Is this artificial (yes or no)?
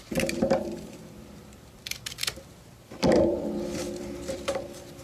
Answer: yes